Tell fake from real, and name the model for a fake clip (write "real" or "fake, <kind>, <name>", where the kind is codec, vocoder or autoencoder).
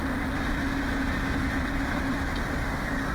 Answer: real